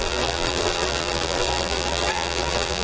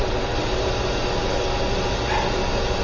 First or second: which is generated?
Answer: first